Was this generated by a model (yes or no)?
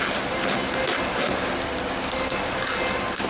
no